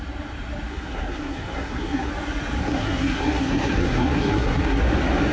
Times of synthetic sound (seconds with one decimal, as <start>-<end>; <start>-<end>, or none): 0.7-2.1; 2.6-4.8